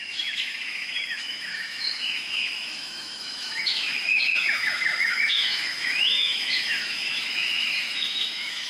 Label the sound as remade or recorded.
remade